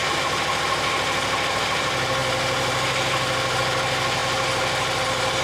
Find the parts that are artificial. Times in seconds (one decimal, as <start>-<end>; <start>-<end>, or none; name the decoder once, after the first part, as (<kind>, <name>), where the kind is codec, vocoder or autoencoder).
none